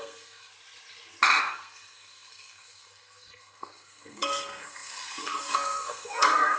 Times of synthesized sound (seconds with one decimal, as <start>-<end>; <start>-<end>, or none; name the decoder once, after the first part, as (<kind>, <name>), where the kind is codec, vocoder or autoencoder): 0.0-0.5 (codec, SNAC); 1.4-6.6